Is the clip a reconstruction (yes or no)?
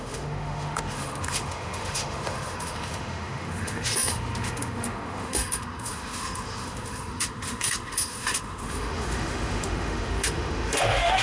yes